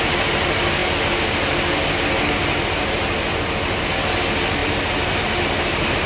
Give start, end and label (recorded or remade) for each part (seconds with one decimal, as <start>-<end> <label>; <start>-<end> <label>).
0.0-6.1 recorded